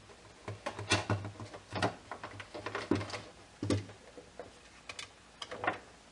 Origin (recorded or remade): recorded